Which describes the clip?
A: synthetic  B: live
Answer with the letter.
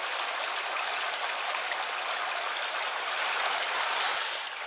A